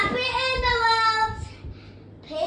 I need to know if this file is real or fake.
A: real